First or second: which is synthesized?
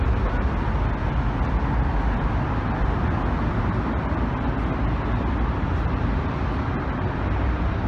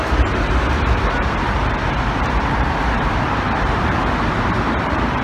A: second